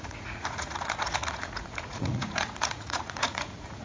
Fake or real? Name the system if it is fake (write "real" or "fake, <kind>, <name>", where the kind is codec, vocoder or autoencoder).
fake, vocoder, Vocos